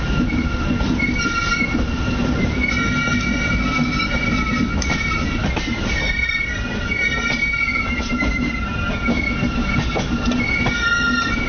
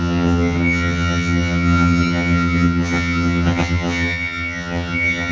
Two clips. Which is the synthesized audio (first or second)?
second